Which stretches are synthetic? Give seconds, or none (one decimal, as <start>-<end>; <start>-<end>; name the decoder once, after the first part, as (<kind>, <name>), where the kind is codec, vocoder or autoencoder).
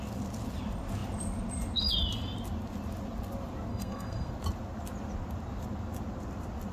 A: 3.7-4.3 (codec, SNAC)